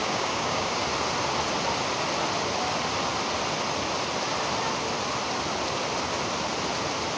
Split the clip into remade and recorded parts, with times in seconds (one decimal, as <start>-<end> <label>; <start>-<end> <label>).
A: 0.0-0.8 remade; 0.8-7.2 recorded